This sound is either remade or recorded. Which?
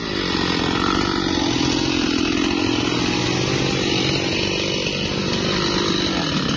recorded